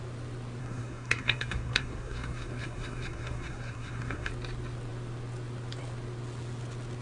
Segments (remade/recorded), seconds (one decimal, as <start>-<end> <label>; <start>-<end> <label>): 0.0-0.6 recorded; 0.6-4.3 remade; 4.3-7.0 recorded